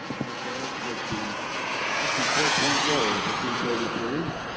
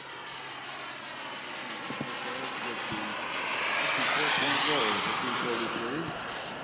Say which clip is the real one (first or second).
second